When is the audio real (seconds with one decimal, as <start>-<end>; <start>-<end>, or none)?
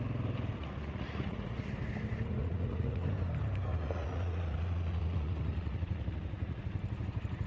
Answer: 0.0-0.6; 1.7-2.4; 3.1-3.7; 6.6-7.5